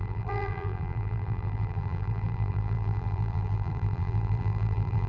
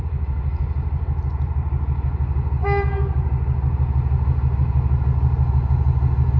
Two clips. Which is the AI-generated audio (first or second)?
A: first